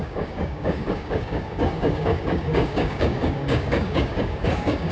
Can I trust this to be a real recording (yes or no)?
no